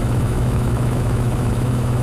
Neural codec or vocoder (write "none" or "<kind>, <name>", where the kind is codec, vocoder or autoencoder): autoencoder, DAC-VAE